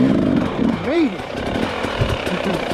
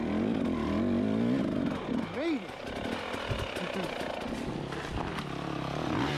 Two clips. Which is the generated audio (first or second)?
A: first